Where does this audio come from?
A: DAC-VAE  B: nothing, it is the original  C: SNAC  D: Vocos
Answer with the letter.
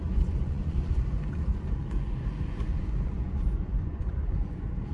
D